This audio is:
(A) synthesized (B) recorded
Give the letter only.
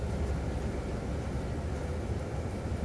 B